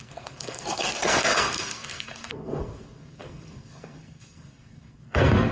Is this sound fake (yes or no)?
yes